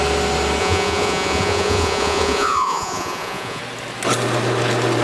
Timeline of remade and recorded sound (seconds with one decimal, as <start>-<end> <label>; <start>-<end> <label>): 0.0-0.6 recorded; 0.6-3.6 remade; 3.6-5.0 recorded